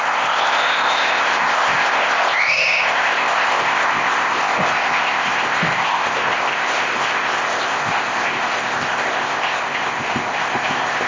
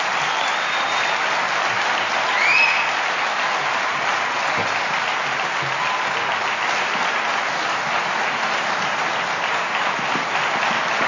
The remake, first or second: first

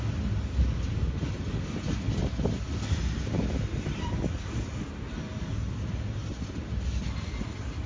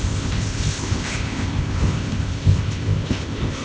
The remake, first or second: second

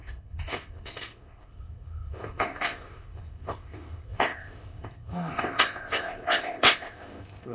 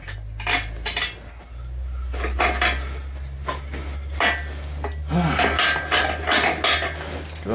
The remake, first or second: first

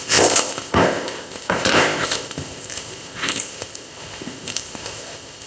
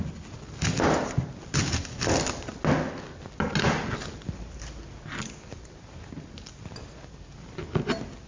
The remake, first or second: first